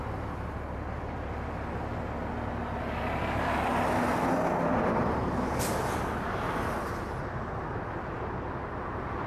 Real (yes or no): yes